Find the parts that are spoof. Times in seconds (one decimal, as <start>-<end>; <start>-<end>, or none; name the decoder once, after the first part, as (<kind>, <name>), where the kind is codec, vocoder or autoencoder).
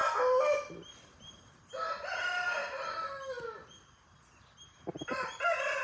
none